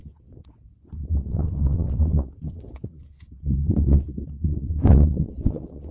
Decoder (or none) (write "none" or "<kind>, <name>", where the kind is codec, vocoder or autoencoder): vocoder, WaveNeXt